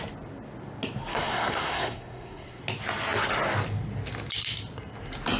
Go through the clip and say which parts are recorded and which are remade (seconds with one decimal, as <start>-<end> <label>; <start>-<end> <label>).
0.0-1.1 recorded; 1.1-2.6 remade; 2.6-5.4 recorded